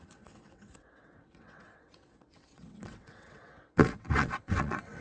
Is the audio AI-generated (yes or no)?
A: yes